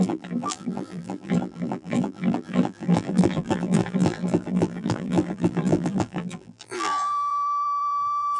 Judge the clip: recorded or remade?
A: remade